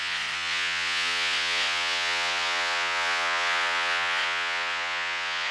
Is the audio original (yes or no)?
no